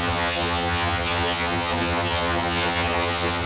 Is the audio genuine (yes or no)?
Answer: no